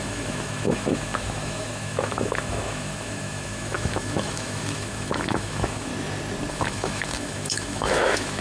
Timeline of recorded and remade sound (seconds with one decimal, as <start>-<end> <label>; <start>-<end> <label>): 0.0-5.9 remade; 5.9-6.5 recorded; 6.5-8.4 remade